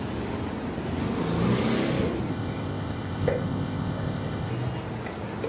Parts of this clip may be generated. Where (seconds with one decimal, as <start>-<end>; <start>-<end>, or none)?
2.3-4.5